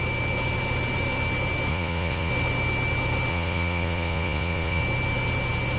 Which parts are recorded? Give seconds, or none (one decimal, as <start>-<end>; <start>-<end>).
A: 0.0-1.7; 2.3-3.3; 4.8-5.8